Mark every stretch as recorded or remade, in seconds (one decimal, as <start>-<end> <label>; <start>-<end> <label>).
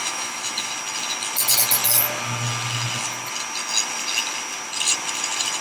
0.0-0.7 remade; 0.7-5.6 recorded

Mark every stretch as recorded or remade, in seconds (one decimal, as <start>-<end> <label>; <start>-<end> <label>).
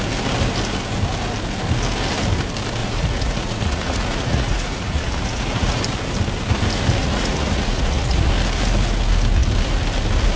0.0-2.8 recorded; 2.8-5.8 remade; 5.8-7.0 recorded; 7.0-8.3 remade; 8.3-10.4 recorded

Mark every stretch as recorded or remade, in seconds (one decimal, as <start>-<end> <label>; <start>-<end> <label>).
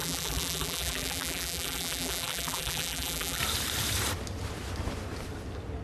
0.0-3.4 remade; 3.4-5.8 recorded